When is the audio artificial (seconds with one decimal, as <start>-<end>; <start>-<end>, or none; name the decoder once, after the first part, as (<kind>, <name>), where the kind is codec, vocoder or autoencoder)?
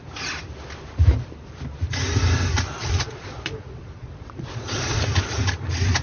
2.8-5.0 (vocoder, Vocos)